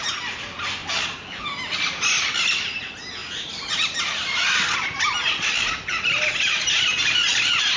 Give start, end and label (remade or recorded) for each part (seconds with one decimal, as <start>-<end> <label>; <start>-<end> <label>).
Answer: 0.0-7.8 recorded

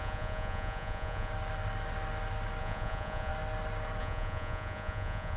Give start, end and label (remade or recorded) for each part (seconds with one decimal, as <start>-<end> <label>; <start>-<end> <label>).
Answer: 0.0-1.3 remade; 1.3-2.6 recorded; 2.6-3.3 remade; 3.3-4.0 recorded; 4.0-5.4 remade

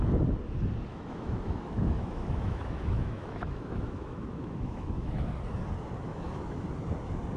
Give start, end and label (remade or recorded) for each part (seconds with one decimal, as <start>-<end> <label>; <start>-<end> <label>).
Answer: 0.0-0.9 recorded; 0.9-5.3 remade; 5.3-6.1 recorded; 6.1-6.7 remade; 6.7-7.4 recorded

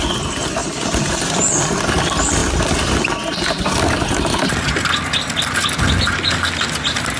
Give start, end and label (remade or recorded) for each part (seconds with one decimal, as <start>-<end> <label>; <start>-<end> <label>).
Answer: 0.0-7.2 recorded

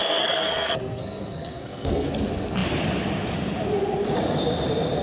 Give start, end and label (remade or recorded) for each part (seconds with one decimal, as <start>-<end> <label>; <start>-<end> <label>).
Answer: 0.0-2.1 remade; 2.1-5.0 recorded

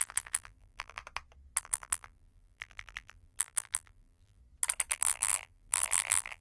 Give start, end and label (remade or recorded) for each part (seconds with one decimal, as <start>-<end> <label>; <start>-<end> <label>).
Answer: 0.0-1.0 remade; 1.0-1.6 recorded; 1.6-4.4 remade; 4.4-4.9 recorded; 4.9-6.4 remade